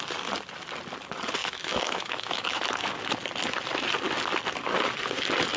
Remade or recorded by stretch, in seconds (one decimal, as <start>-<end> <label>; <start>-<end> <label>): 0.0-1.4 recorded; 1.4-2.6 remade; 2.6-5.6 recorded